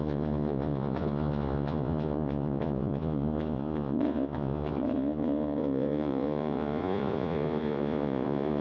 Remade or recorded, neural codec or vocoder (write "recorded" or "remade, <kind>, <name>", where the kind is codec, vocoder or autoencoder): remade, vocoder, Vocos